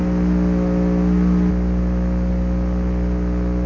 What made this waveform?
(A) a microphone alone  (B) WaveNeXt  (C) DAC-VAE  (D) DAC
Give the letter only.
A